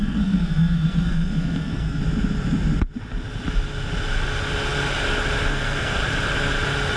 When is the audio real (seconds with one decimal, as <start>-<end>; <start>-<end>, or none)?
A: 2.0-5.5; 6.0-7.0

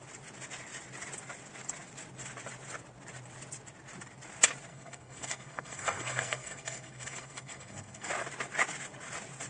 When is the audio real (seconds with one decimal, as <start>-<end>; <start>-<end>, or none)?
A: 0.0-4.7; 8.1-9.5